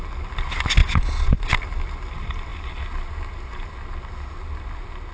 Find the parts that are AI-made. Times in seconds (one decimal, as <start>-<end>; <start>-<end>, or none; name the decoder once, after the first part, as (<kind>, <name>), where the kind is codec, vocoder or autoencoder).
0.8-1.5 (vocoder, Vocos)